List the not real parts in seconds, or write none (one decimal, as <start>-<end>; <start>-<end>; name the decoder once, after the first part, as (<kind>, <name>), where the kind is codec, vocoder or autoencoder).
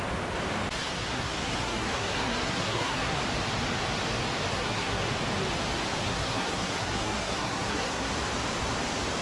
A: 0.8-3.2 (codec, SNAC); 4.5-5.1; 6.1-8.1